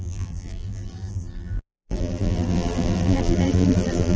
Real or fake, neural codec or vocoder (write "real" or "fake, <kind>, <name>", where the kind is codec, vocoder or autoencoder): fake, vocoder, BigVGAN v2